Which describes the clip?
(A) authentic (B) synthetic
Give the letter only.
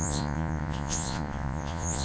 B